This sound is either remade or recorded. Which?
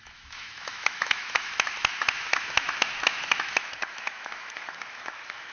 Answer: remade